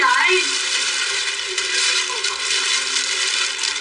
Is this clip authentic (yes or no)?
yes